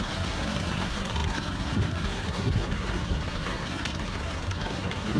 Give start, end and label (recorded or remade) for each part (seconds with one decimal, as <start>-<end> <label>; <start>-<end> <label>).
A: 0.0-5.2 remade